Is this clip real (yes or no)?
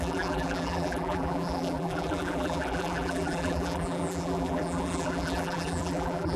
no